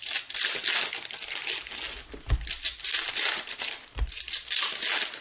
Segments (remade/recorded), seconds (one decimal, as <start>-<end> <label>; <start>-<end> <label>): 0.0-5.2 recorded